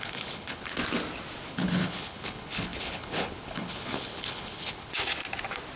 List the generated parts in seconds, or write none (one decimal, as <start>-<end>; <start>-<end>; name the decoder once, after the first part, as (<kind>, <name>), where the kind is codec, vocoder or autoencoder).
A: 0.0-0.7 (codec, HILCodec); 1.5-4.9